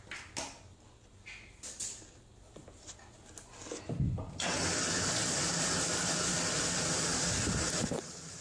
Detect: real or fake real